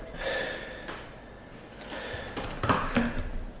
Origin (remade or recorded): recorded